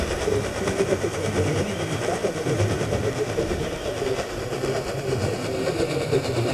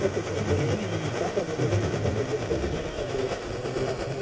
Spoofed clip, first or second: first